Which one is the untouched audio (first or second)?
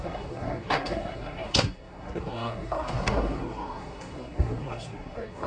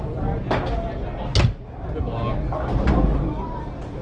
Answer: second